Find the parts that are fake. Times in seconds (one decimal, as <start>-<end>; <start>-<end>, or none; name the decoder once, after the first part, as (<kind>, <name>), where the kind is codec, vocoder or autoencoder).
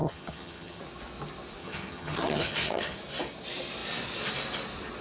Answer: 0.0-0.8 (vocoder, HiFi-GAN); 1.6-3.0